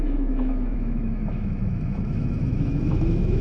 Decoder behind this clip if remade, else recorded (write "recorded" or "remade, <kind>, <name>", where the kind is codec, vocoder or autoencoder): remade, autoencoder, DAC-VAE